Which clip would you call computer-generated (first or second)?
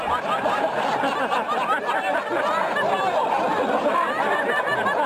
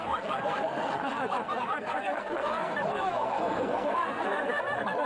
second